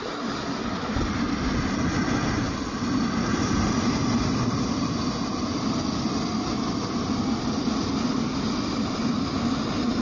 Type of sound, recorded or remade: recorded